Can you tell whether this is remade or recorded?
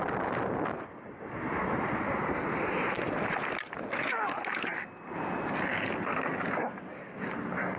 recorded